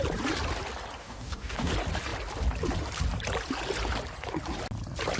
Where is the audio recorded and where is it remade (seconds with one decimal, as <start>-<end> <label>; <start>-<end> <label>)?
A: 0.0-1.0 recorded; 1.0-1.7 remade; 1.7-5.2 recorded

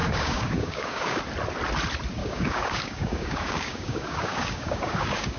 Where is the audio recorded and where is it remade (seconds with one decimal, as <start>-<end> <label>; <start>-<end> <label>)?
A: 0.0-1.2 remade; 1.2-2.2 recorded; 2.2-5.4 remade

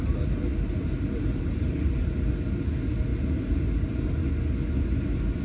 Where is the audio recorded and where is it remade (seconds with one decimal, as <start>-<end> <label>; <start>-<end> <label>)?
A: 0.0-5.4 recorded

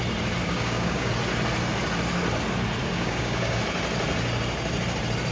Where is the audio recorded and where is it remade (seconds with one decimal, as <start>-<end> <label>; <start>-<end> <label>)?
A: 0.0-0.4 recorded; 0.4-1.1 remade; 1.1-2.8 recorded; 2.8-3.6 remade; 3.6-5.3 recorded

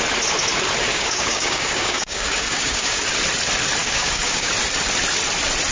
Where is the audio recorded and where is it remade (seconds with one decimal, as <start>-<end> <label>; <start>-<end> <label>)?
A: 0.0-0.9 recorded; 0.9-3.0 remade; 3.0-3.8 recorded; 3.8-4.5 remade; 4.5-5.7 recorded

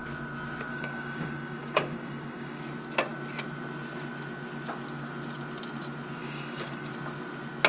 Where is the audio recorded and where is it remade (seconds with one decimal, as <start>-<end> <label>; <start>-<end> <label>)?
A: 0.0-0.7 recorded; 0.7-2.6 remade; 2.6-6.2 recorded; 6.2-6.9 remade; 6.9-7.7 recorded

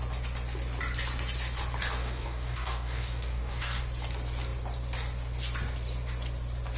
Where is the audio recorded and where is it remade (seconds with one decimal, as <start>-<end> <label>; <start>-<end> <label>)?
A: 0.0-2.0 recorded; 2.0-3.8 remade; 3.8-6.8 recorded

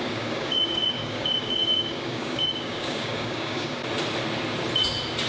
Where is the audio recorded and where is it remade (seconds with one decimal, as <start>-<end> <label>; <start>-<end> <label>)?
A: 0.0-3.8 remade; 3.8-5.3 recorded